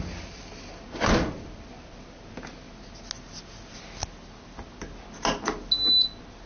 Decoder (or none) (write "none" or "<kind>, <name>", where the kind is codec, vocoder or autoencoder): none